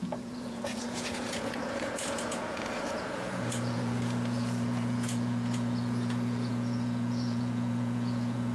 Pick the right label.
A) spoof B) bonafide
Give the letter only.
A